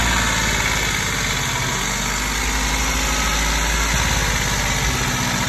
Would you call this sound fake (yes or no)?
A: no